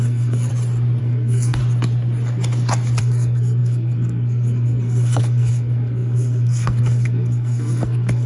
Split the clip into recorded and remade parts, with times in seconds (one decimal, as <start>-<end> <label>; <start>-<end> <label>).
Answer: 0.0-0.5 remade; 0.5-1.0 recorded; 1.0-1.6 remade; 1.6-3.0 recorded; 3.0-8.3 remade